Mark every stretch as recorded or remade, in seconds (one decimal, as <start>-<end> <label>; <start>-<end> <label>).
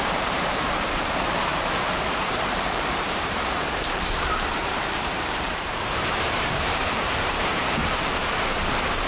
0.0-9.1 remade